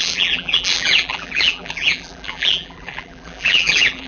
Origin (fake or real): fake